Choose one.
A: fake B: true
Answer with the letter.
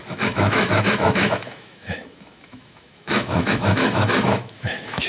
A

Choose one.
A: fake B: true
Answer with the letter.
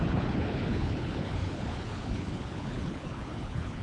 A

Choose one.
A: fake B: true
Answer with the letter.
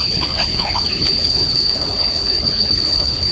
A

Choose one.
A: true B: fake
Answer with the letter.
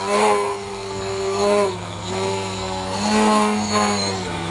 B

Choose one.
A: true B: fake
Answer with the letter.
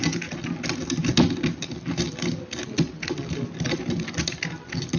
A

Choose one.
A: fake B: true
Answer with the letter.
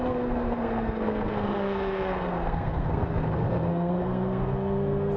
A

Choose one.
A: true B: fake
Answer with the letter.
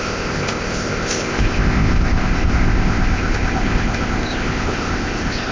B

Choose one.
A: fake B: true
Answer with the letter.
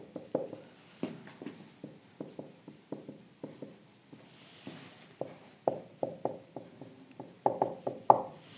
B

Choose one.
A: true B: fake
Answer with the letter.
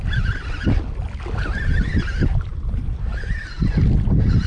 A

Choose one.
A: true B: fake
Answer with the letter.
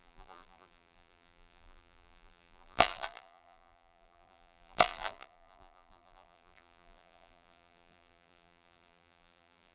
B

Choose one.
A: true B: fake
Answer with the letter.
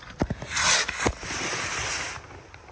A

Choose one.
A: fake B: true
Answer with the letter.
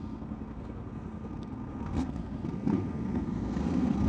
A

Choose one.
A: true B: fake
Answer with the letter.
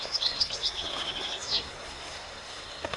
B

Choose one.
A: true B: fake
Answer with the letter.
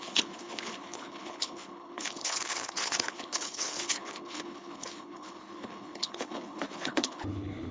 B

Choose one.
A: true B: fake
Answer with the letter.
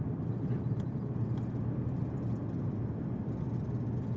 A